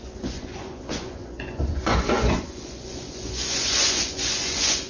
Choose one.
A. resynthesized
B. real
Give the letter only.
A